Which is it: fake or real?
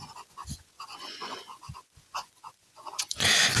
fake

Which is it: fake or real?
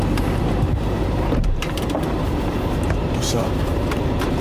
fake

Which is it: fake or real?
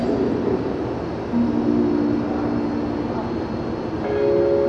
real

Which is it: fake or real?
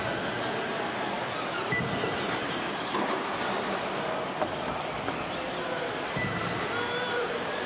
real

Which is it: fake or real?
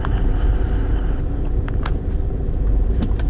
fake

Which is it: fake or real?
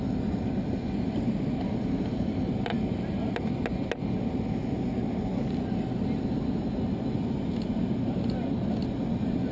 real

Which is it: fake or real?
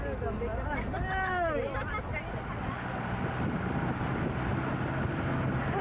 real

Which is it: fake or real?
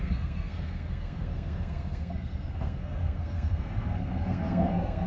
fake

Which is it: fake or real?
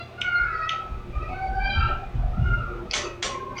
real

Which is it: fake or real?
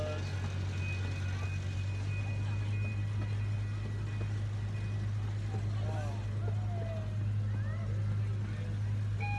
real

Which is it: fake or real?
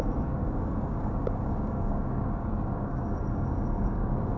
fake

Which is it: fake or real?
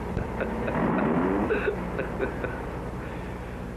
fake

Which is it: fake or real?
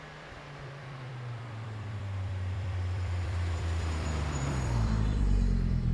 fake